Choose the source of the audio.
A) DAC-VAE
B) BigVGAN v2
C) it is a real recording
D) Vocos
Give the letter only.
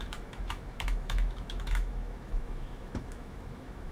A